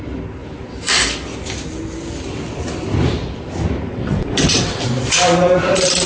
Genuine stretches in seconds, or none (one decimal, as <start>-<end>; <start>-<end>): 0.0-3.9; 4.8-6.1